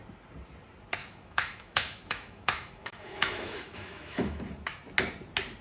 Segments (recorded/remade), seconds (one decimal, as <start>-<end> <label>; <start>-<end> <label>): 0.0-1.0 recorded; 1.0-4.4 remade; 4.4-5.6 recorded